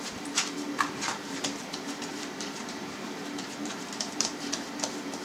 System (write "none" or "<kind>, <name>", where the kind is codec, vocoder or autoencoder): vocoder, BigVGAN v2